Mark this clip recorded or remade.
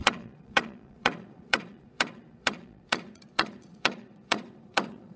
remade